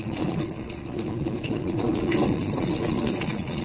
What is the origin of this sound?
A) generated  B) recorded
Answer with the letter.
A